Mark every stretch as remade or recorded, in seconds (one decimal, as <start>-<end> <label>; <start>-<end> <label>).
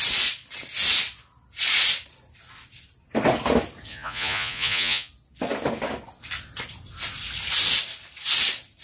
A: 0.0-3.9 recorded; 3.9-5.1 remade; 5.1-8.8 recorded